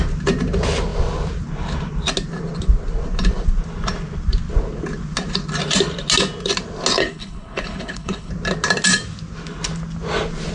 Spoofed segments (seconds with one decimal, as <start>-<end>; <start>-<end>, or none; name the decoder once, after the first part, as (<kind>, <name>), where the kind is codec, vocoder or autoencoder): 7.0-8.3 (codec, HILCodec)